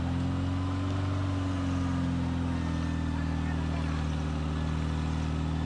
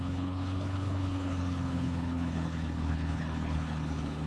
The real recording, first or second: first